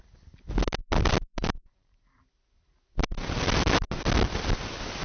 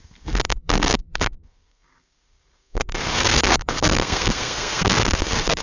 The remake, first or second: second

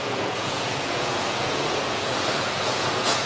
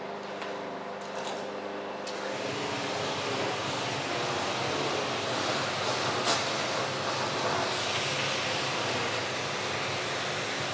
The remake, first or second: first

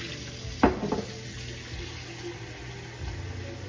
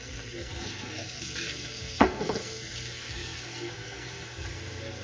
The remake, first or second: second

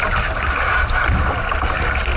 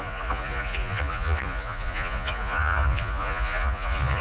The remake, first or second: second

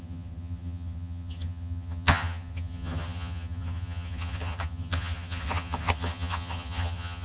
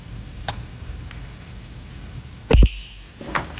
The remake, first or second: first